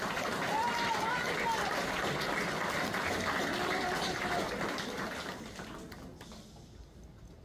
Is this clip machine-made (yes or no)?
no